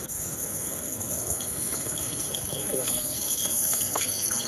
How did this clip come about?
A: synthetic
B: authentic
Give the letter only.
A